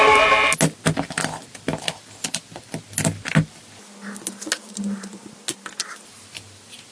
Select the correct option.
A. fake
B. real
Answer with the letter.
B